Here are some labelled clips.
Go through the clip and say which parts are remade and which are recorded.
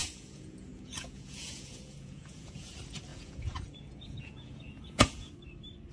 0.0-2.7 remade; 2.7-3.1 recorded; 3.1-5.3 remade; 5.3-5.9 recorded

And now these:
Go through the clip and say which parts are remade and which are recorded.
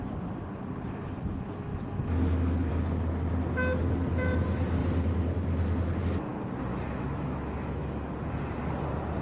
0.0-6.7 recorded; 6.7-8.1 remade; 8.1-9.2 recorded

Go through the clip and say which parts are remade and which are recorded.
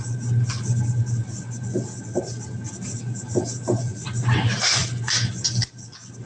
0.0-6.3 recorded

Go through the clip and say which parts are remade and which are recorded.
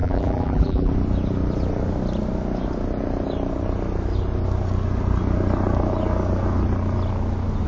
0.0-0.9 remade; 0.9-7.7 recorded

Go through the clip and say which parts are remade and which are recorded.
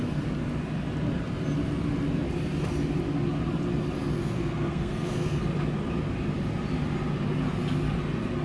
0.0-4.2 recorded; 4.2-5.4 remade; 5.4-8.4 recorded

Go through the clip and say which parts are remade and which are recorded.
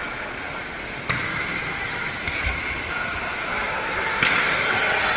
0.0-1.3 recorded; 1.3-4.4 remade; 4.4-5.2 recorded